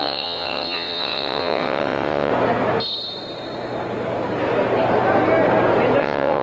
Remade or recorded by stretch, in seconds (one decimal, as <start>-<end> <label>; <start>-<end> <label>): 0.0-2.3 remade; 2.3-6.0 recorded; 6.0-6.4 remade